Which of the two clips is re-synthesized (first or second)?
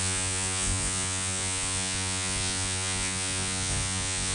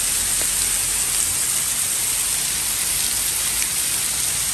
first